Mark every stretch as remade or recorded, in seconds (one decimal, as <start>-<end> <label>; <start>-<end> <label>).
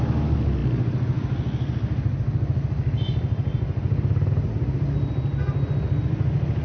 0.0-6.6 recorded